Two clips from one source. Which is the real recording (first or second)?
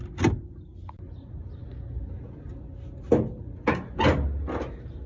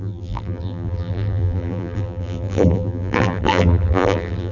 first